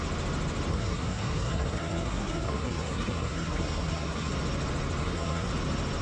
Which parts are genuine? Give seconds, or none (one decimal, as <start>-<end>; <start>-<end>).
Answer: 0.0-0.7; 4.3-5.0; 5.5-6.0